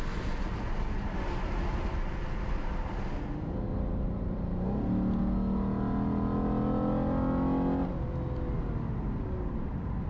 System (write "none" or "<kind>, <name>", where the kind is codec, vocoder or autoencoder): none